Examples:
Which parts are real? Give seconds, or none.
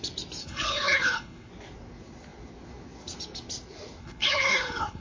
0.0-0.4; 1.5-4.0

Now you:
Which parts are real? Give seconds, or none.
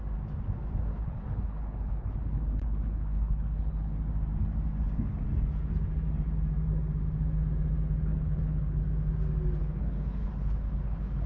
0.0-0.9; 4.0-8.1; 8.8-9.6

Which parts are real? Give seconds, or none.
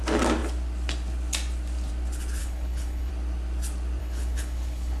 0.0-2.4; 3.1-4.0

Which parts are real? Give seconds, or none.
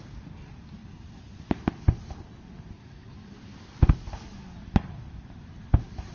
0.0-6.1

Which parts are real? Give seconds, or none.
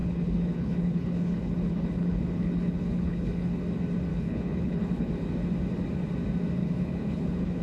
3.6-4.1; 5.1-6.6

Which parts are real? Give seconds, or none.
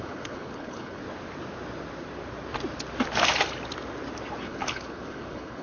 1.0-4.4